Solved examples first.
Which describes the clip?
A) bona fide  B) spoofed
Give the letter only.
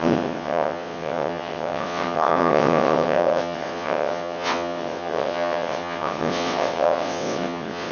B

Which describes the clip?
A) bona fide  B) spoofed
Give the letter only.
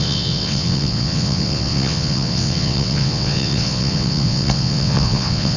B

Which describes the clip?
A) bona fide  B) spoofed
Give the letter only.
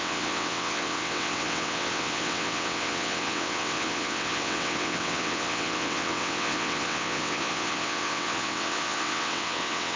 B